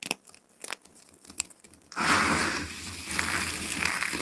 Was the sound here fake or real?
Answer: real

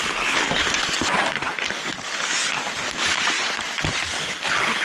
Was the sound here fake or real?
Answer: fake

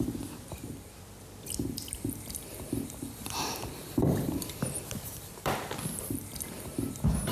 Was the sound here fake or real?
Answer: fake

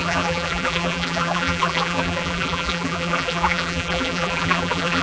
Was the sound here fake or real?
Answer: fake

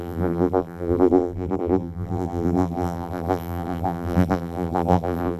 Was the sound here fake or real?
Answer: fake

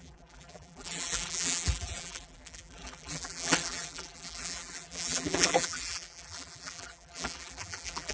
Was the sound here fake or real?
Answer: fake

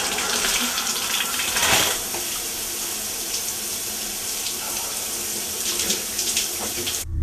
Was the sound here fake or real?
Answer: fake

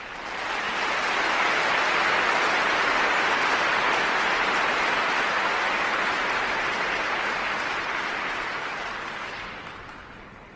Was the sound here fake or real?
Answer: real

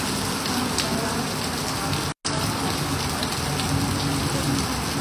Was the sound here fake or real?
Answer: real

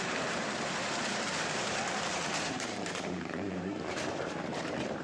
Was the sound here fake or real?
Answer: fake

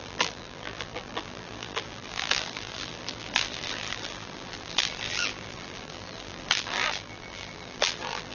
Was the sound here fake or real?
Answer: fake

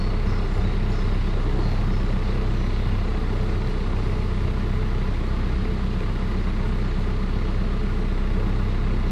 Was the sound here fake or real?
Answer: real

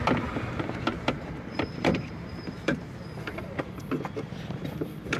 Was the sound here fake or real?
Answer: fake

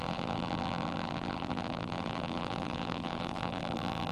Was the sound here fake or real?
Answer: fake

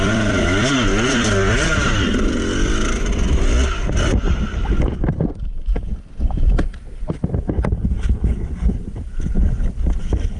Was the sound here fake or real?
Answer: fake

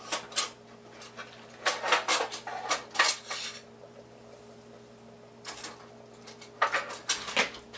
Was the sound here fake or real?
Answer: real